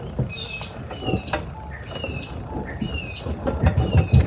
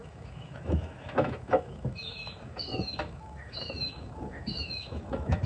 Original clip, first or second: first